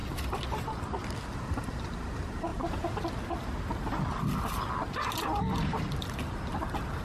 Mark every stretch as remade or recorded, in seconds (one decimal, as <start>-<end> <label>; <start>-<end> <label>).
0.0-7.0 recorded